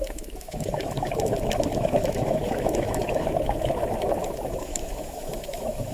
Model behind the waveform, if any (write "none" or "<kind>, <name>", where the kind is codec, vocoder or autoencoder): autoencoder, DAC-VAE